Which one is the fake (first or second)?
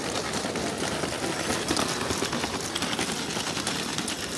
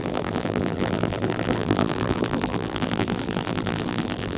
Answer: second